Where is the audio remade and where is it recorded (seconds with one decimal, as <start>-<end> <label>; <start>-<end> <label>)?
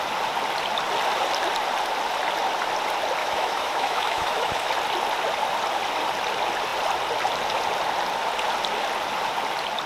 0.0-3.2 recorded; 3.2-4.7 remade; 4.7-9.9 recorded